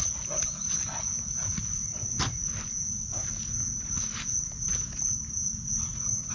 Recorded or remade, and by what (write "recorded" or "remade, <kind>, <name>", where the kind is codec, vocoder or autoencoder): recorded